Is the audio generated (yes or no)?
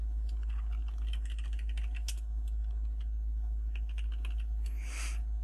no